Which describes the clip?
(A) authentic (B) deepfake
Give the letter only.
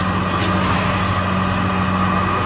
A